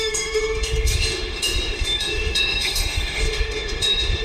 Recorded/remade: remade